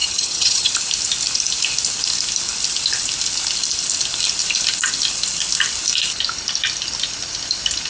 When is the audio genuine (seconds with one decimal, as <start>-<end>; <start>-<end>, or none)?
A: 0.7-7.9